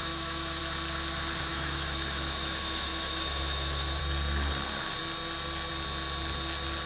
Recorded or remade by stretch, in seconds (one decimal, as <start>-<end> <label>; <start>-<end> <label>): 0.0-0.6 remade; 0.6-1.5 recorded; 1.5-4.0 remade; 4.0-6.9 recorded